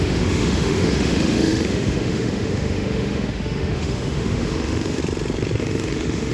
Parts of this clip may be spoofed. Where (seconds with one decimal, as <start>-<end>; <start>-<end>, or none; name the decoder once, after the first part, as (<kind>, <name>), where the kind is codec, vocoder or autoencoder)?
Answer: 0.0-5.0 (autoencoder, DAC-VAE); 5.6-6.3